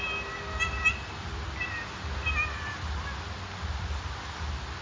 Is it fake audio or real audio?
real